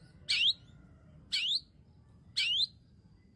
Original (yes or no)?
yes